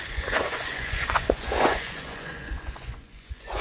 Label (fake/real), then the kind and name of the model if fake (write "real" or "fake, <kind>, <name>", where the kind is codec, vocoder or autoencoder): fake, vocoder, Vocos